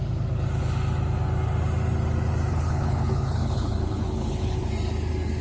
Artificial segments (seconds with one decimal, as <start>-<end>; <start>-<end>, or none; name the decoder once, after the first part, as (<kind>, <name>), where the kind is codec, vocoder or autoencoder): 2.5-4.7 (codec, HILCodec)